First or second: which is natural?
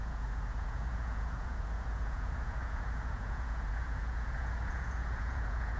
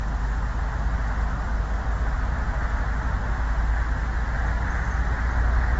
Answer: second